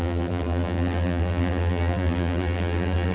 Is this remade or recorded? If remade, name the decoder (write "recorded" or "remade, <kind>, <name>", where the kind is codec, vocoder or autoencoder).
remade, vocoder, BigVGAN v2